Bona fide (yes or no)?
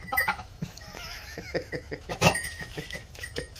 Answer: no